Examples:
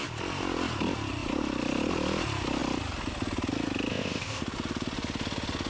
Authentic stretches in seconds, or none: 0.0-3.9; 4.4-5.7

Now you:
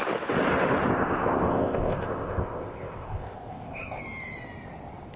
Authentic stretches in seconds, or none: 0.0-0.9; 4.0-5.2

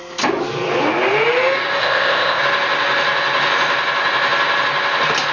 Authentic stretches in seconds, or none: 0.0-1.8; 2.4-5.3

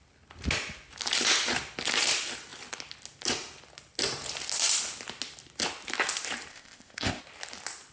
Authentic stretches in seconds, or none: 0.0-6.5; 7.2-7.9

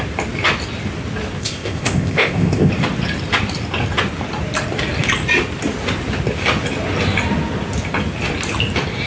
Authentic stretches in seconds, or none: 0.0-1.4; 2.7-9.1

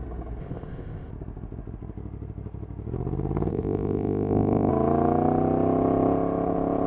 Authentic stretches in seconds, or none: 0.0-0.4; 1.1-3.5; 4.7-6.9

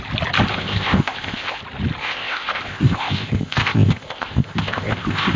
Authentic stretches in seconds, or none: 0.0-0.5; 1.6-2.0